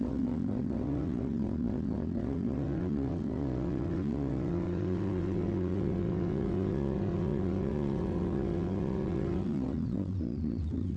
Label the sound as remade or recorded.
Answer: remade